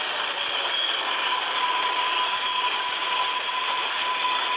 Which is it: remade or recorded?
recorded